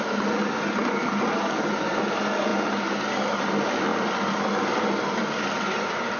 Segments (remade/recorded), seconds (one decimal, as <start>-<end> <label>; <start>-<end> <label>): 0.0-6.2 recorded